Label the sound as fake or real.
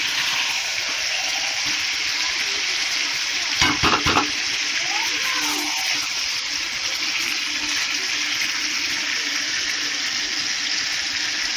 real